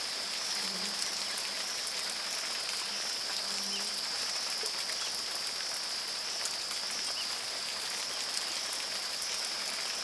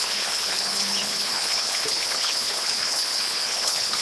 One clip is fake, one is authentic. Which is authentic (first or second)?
first